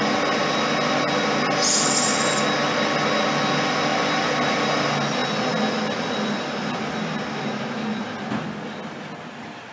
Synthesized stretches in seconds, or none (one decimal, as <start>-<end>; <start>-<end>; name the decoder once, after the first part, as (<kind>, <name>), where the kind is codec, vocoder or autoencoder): none